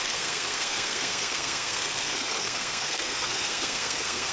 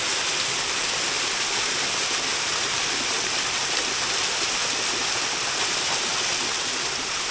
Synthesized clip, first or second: first